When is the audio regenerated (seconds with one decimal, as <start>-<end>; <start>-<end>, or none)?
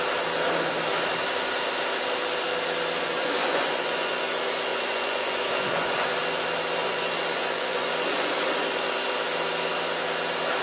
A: 3.0-4.2; 4.7-6.2; 6.8-8.3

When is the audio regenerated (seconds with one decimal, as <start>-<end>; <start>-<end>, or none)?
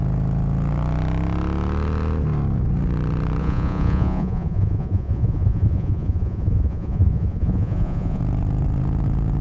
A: 3.4-8.2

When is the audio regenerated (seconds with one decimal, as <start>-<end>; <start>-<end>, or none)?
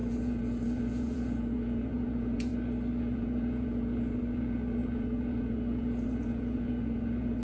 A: 0.0-2.5; 3.0-7.4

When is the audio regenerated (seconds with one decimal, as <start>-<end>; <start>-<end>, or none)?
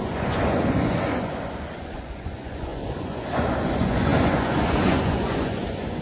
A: 0.0-6.0